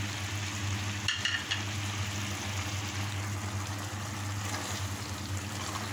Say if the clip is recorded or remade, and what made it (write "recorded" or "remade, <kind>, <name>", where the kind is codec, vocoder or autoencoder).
recorded